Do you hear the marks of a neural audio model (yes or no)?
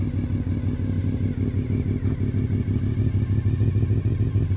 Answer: no